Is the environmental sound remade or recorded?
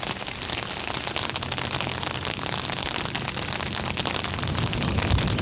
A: recorded